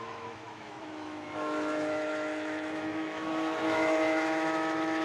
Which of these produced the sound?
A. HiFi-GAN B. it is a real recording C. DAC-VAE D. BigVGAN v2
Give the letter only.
C